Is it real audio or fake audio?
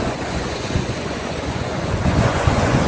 fake